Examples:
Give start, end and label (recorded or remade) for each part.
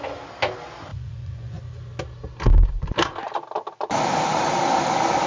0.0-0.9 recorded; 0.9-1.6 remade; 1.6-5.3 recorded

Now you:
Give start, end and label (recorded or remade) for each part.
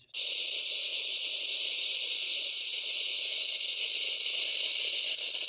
0.0-0.9 recorded; 0.9-1.9 remade; 1.9-2.3 recorded; 2.3-3.4 remade; 3.4-5.5 recorded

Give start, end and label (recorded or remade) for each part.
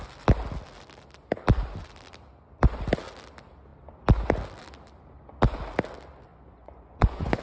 0.0-6.3 recorded; 6.3-7.4 remade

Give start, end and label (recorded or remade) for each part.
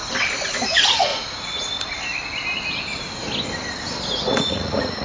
0.0-0.5 recorded; 0.5-1.1 remade; 1.1-4.1 recorded; 4.1-5.0 remade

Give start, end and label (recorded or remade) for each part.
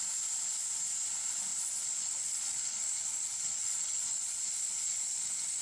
0.0-1.5 recorded; 1.5-4.9 remade; 4.9-5.6 recorded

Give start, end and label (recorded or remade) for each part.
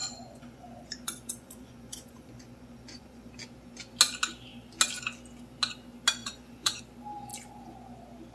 0.0-3.3 remade; 3.3-6.2 recorded; 6.2-6.8 remade; 6.8-8.3 recorded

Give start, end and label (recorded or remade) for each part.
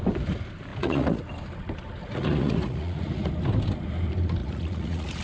0.0-0.7 recorded; 0.7-1.2 remade; 1.2-2.0 recorded; 2.0-3.3 remade; 3.3-4.4 recorded; 4.4-5.2 remade